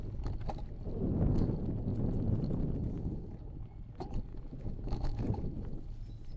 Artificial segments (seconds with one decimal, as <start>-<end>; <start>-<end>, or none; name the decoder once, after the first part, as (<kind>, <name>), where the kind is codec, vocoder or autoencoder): 4.3-5.2 (autoencoder, DAC-VAE)